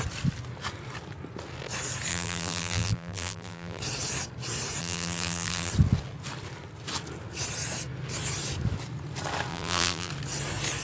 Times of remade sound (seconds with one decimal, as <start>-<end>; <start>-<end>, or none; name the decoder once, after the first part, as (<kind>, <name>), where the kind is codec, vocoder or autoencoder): 2.1-3.8 (vocoder, BigVGAN v2); 4.8-5.7; 9.5-10.1